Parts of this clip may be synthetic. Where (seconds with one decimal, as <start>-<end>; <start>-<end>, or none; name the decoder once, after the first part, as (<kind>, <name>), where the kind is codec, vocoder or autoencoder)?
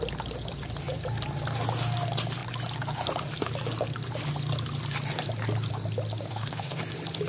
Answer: 6.3-6.8 (autoencoder, DAC-VAE)